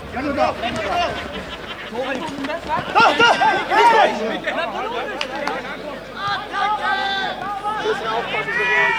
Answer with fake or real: real